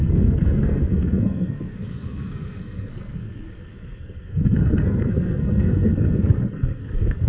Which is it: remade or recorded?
remade